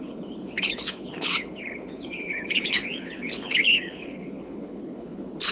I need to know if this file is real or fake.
fake